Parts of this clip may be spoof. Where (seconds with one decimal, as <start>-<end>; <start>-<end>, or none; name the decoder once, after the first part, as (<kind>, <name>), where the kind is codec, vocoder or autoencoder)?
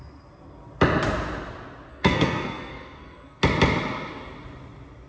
1.9-3.4 (codec, SNAC)